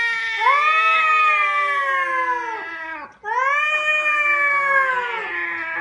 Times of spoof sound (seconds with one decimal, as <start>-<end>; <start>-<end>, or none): none